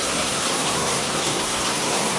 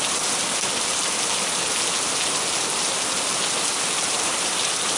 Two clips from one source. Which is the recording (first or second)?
second